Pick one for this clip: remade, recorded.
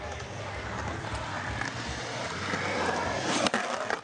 recorded